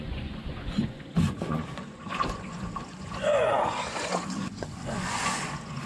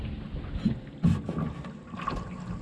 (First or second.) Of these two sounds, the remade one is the first